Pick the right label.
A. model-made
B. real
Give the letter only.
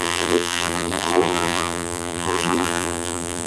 A